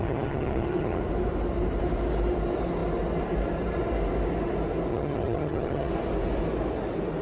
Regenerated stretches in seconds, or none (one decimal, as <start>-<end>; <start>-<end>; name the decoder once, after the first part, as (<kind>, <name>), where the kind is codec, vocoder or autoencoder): 0.0-1.0 (vocoder, HiFi-GAN); 4.9-5.9